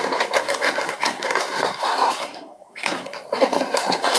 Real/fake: fake